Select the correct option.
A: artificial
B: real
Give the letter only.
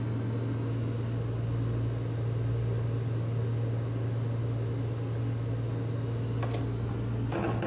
B